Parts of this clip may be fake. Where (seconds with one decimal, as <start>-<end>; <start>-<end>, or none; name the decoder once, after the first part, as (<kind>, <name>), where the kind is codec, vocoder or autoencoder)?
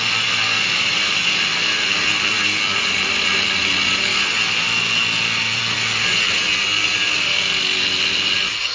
none